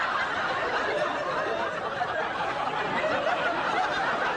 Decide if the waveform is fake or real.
fake